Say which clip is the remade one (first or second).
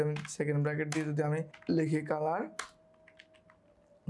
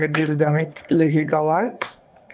second